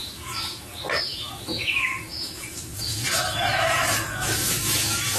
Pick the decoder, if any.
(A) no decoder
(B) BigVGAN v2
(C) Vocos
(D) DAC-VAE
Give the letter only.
D